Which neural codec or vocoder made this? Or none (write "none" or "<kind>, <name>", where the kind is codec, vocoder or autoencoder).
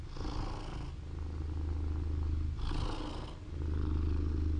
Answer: none